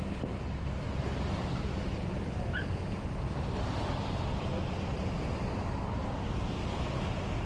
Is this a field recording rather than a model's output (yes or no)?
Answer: yes